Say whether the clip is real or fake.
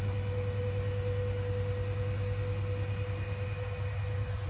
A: real